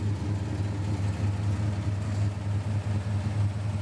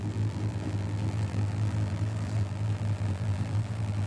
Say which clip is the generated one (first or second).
second